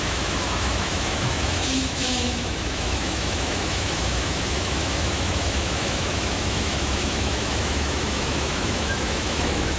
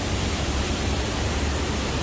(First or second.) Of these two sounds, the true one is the second